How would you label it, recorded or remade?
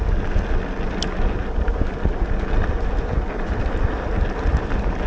recorded